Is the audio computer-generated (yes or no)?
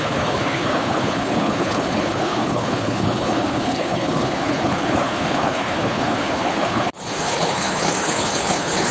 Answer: yes